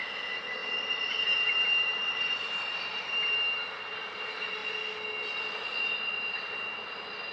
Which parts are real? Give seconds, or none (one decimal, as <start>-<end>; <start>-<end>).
0.0-0.6; 3.8-7.3